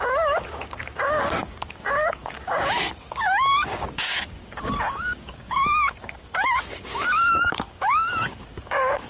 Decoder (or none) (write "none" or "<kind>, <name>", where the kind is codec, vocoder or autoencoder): codec, DAC